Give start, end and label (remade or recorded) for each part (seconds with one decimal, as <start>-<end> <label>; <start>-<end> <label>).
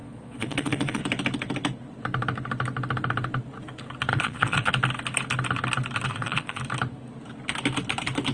0.0-1.0 remade; 1.0-4.1 recorded; 4.1-4.7 remade; 4.7-6.1 recorded; 6.1-6.6 remade; 6.6-8.3 recorded